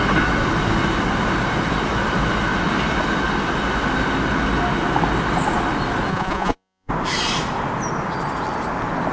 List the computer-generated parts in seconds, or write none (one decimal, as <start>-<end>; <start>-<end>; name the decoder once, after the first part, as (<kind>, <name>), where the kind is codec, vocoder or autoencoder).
6.1-6.9 (vocoder, Vocos)